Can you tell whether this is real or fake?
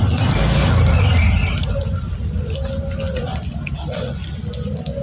real